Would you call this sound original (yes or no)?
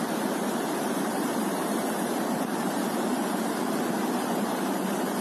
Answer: no